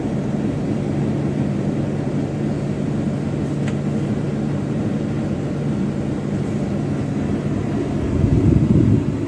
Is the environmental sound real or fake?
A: real